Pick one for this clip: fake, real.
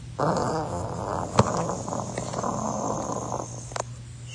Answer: real